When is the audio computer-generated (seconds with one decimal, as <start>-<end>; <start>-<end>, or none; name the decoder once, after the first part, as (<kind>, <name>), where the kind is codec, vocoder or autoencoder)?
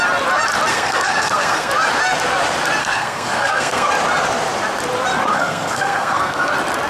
0.7-1.7 (codec, SNAC); 2.8-3.9; 5.3-6.5